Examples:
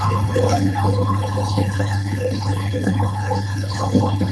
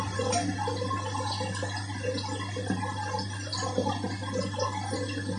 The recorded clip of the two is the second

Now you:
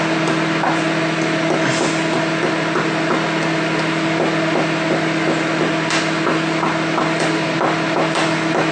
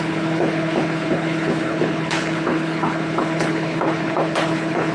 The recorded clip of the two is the first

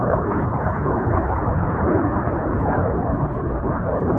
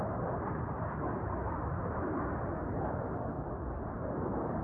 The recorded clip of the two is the second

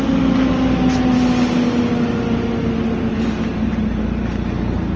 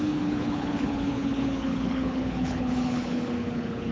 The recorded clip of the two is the first